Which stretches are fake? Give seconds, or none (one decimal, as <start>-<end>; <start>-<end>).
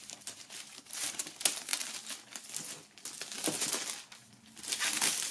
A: 0.0-1.7